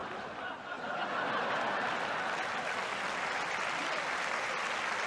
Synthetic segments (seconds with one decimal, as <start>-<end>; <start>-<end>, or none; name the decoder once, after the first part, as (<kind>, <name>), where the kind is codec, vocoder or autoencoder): none